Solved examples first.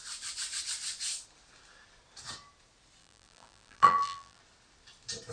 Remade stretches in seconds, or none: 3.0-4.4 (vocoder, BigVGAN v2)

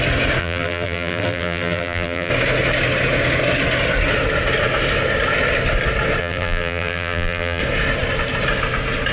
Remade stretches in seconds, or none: 0.4-2.3 (vocoder, BigVGAN v2); 6.2-7.6

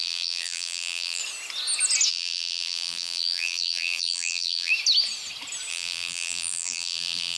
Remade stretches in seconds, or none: 0.0-1.2 (vocoder, BigVGAN v2); 2.1-4.7; 5.7-7.4

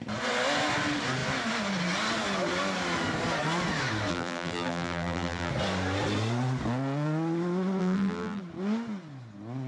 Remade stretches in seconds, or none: 4.1-5.5 (vocoder, BigVGAN v2); 7.8-8.4

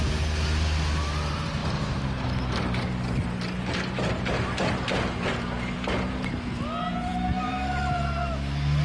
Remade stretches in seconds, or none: none

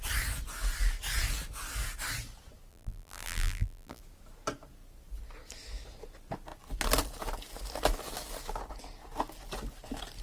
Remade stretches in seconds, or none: 2.7-4.0 (vocoder, BigVGAN v2)

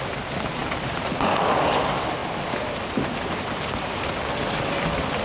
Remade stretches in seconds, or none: 2.2-3.9 (vocoder, BigVGAN v2)